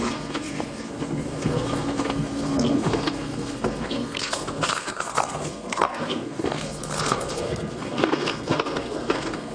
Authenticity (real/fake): fake